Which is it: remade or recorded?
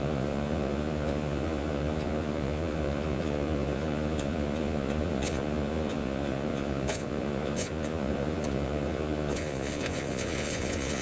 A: remade